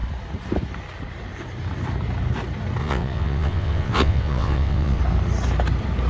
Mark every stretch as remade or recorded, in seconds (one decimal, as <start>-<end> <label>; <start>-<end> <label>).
0.0-2.8 recorded; 2.8-5.0 remade; 5.0-6.1 recorded